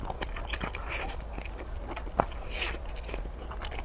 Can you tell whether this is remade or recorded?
recorded